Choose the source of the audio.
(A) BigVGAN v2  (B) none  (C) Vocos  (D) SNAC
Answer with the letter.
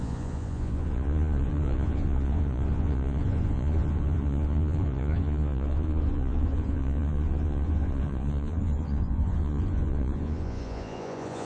C